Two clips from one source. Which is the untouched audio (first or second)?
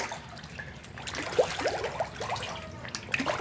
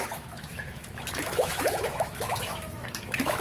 first